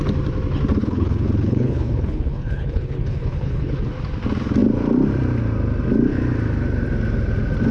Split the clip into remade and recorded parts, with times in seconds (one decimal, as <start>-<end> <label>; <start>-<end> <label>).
0.0-0.8 recorded; 0.8-3.9 remade; 3.9-7.7 recorded